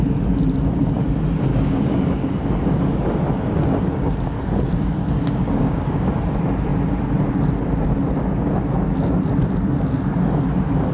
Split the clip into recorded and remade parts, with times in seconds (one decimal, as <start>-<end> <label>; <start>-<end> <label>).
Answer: 0.0-1.5 recorded; 1.5-6.1 remade; 6.1-10.9 recorded